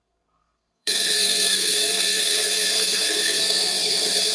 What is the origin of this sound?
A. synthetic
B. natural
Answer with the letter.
A